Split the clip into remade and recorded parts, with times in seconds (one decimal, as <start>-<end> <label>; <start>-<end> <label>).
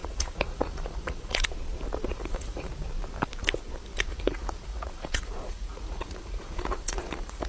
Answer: 0.0-1.5 remade; 1.5-2.1 recorded; 2.1-2.7 remade; 2.7-4.1 recorded; 4.1-7.5 remade